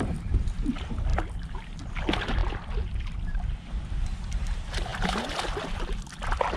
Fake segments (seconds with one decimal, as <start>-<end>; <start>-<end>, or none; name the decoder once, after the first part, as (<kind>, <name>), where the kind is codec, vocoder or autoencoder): 1.1-1.9 (vocoder, BigVGAN v2); 4.9-5.6